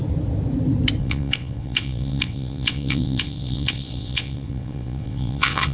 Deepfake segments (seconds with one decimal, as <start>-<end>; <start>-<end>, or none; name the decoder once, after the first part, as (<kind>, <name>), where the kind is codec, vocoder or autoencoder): 1.0-5.7 (vocoder, WaveNeXt)